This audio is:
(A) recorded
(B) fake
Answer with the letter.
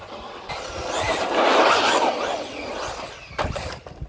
A